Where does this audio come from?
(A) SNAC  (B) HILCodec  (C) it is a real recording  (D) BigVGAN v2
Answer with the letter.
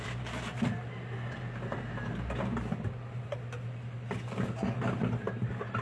C